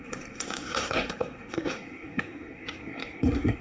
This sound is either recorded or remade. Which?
remade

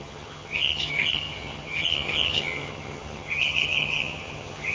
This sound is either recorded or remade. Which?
remade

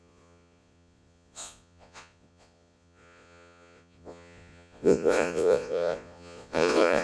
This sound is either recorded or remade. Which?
remade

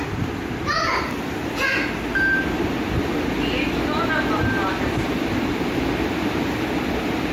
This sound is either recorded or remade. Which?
recorded